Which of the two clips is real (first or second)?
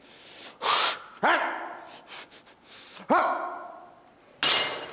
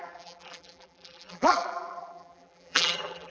first